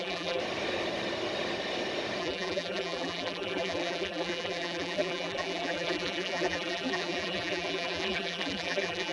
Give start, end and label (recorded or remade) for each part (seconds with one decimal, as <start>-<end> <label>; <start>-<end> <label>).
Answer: 0.0-0.4 remade; 0.4-2.2 recorded; 2.2-9.1 remade